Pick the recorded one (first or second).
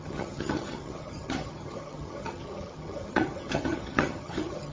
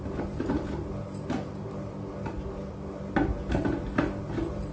second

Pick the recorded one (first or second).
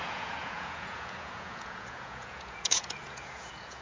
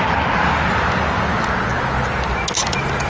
second